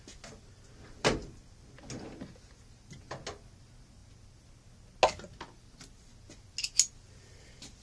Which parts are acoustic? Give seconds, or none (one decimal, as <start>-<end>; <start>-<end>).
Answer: 0.0-7.8